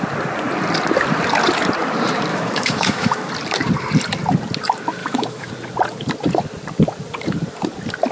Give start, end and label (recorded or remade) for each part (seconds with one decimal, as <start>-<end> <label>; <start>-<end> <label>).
0.0-2.3 recorded; 2.3-3.3 remade; 3.3-5.0 recorded; 5.0-5.5 remade; 5.5-8.1 recorded